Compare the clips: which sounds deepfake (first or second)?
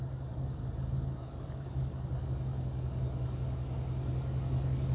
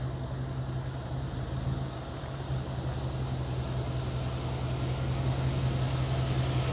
first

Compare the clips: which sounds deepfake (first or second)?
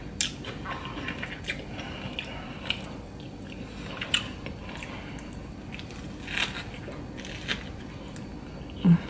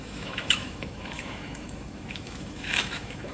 second